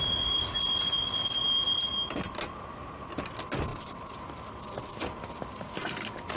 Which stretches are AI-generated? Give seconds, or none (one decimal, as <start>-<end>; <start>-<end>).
none